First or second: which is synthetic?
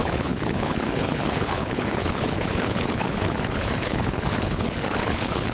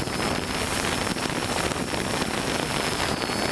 first